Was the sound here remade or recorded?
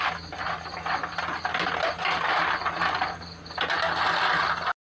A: recorded